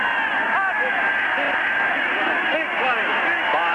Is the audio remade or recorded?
recorded